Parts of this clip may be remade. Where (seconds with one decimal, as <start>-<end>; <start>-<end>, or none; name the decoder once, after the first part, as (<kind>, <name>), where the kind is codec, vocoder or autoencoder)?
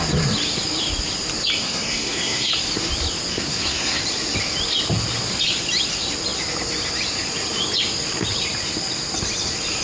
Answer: 1.6-2.5 (codec, SNAC); 3.3-4.0